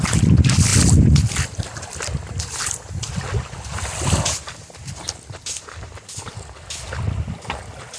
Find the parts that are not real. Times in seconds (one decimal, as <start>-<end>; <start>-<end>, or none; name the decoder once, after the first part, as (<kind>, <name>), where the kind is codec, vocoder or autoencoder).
none